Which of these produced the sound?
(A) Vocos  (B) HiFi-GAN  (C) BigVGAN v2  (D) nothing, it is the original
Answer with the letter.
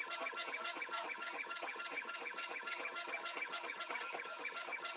B